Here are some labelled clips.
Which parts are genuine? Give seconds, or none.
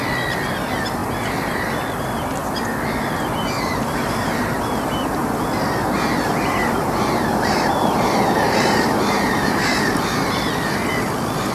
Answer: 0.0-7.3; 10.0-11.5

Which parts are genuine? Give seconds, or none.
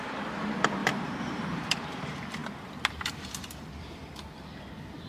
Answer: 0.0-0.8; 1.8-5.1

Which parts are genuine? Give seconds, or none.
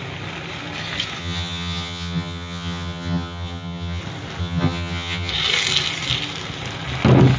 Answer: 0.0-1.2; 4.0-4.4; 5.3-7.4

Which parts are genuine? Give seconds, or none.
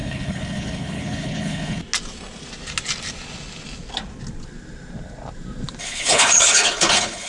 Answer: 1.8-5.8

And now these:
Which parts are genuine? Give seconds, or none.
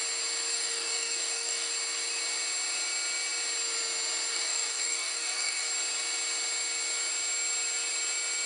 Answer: 0.0-0.5; 1.7-4.3; 5.7-8.5